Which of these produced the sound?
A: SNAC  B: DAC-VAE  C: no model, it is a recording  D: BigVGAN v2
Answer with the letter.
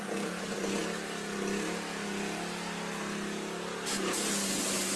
C